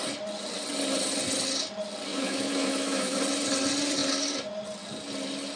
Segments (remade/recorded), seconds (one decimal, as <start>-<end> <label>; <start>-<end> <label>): 0.0-2.1 recorded; 2.1-3.2 remade; 3.2-5.6 recorded